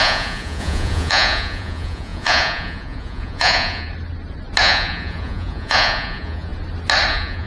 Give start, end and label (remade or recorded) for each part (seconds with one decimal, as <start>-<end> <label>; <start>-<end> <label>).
0.0-3.9 remade; 3.9-4.6 recorded; 4.6-6.5 remade; 6.5-7.1 recorded; 7.1-7.5 remade